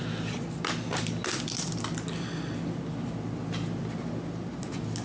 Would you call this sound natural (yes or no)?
yes